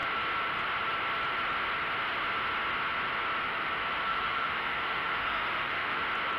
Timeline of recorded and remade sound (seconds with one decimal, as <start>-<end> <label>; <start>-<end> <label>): 0.0-4.1 recorded; 4.1-6.0 remade; 6.0-6.4 recorded